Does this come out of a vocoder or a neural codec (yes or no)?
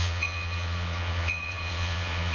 yes